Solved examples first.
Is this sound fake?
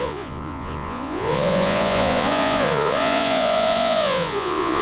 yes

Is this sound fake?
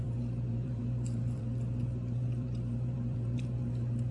yes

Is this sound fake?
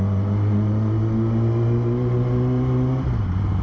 no